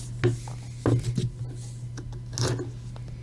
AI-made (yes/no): no